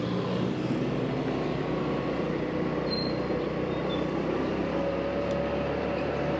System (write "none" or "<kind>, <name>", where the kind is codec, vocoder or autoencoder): none